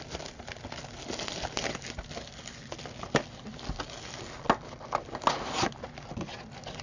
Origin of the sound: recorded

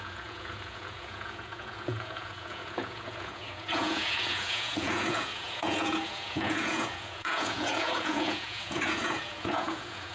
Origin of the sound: remade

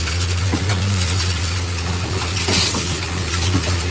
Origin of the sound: remade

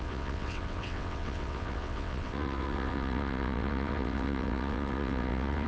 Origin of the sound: remade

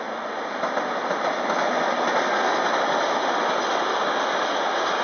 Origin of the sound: recorded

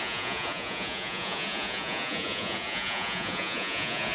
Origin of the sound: remade